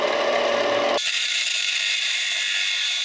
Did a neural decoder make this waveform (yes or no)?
no